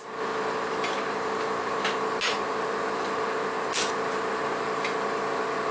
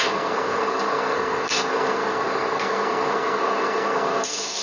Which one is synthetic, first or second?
second